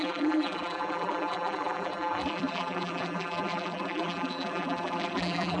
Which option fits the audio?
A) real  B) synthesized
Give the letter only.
B